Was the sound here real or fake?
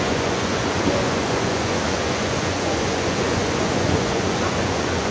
fake